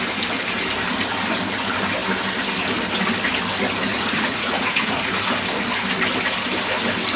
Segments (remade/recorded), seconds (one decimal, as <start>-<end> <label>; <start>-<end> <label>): 0.0-3.9 recorded; 3.9-5.1 remade; 5.1-7.2 recorded